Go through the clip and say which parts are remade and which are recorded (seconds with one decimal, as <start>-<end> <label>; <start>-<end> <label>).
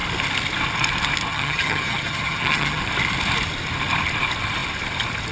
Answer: 0.0-1.3 recorded; 1.3-2.8 remade; 2.8-5.3 recorded